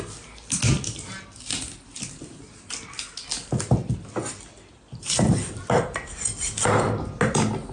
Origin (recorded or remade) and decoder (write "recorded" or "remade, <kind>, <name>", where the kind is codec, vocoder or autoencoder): recorded